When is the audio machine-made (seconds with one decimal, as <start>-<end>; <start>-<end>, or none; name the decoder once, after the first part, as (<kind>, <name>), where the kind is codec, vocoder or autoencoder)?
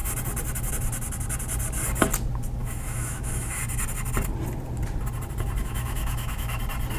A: 2.6-3.6 (autoencoder, DAC-VAE); 5.6-6.6